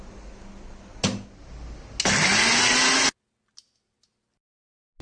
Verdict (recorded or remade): recorded